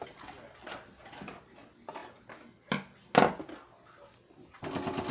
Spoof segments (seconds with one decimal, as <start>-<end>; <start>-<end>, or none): none